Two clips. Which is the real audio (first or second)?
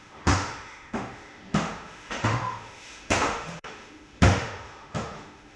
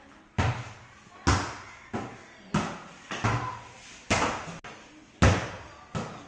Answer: second